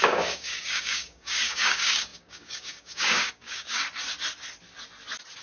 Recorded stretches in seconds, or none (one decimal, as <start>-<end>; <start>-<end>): 3.8-5.4